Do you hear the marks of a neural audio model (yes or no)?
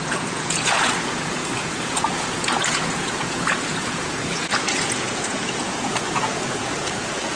yes